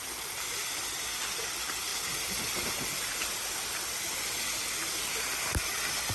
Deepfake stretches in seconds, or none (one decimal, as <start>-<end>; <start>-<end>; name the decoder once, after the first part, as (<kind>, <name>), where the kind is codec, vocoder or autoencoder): none